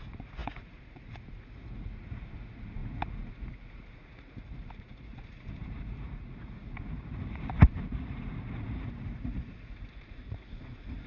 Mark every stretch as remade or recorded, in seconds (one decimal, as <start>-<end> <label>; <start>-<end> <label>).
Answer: 0.0-11.1 remade